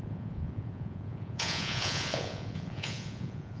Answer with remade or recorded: remade